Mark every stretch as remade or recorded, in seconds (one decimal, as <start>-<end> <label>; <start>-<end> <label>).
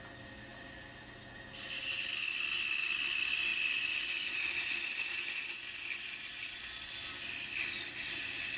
0.0-8.6 recorded